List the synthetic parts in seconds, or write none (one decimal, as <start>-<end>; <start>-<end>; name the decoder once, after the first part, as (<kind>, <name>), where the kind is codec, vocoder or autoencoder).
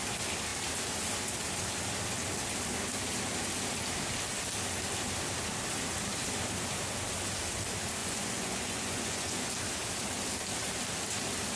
8.0-9.5 (vocoder, Vocos)